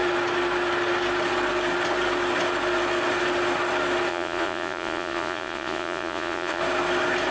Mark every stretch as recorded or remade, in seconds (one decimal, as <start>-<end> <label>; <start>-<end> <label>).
0.0-4.1 recorded; 4.1-6.6 remade; 6.6-7.3 recorded